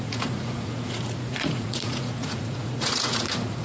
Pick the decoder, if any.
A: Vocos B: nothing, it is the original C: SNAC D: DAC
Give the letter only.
A